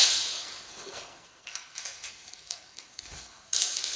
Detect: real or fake fake